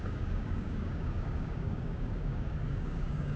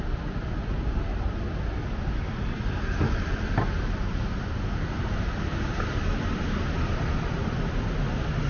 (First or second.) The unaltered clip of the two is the second